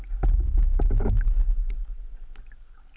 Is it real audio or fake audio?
real